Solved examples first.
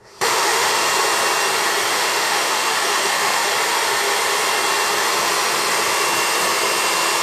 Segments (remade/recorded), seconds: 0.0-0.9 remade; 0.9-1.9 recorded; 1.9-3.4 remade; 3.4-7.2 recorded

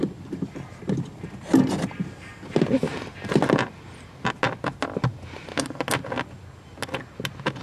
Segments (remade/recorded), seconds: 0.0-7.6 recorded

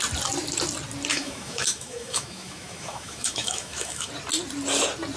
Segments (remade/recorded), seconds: 0.0-1.1 recorded; 1.1-4.1 remade; 4.1-5.2 recorded